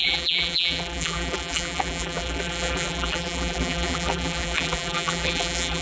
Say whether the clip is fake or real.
fake